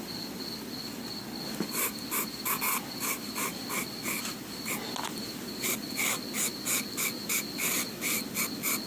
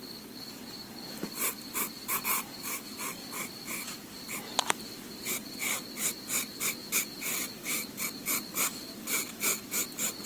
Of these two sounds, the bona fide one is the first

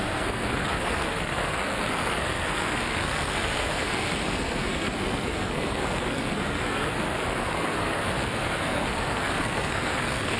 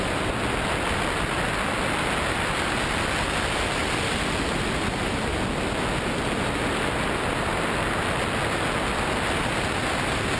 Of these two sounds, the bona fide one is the second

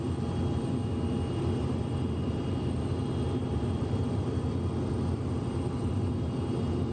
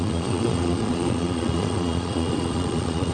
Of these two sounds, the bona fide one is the first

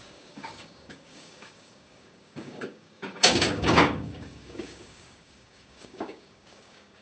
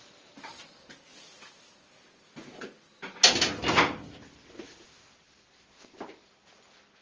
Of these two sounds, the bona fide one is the second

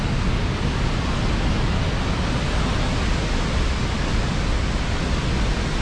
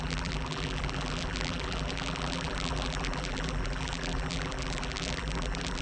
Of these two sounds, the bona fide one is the first